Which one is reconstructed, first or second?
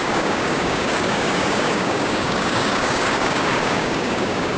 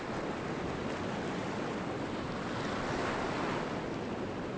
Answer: first